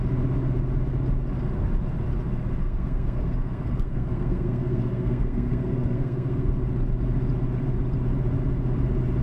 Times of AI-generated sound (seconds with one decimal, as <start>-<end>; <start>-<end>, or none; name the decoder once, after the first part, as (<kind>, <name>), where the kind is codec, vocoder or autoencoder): 2.6-6.5 (codec, SNAC)